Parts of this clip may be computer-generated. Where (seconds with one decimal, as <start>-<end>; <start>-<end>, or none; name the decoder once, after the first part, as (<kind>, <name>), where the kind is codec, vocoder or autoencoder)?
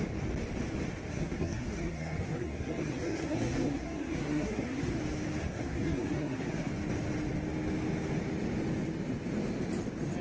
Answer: 1.1-5.0 (codec, SNAC); 5.4-6.7